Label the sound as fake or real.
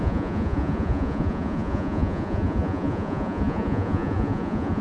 fake